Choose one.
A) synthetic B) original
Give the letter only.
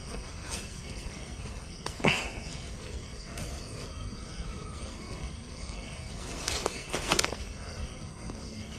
A